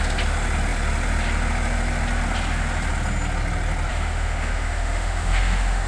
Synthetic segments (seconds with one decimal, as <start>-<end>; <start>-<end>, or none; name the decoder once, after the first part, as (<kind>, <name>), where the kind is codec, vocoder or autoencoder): 3.9-5.9 (autoencoder, DAC-VAE)